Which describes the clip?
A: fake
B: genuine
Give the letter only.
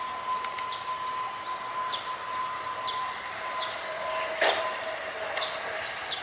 B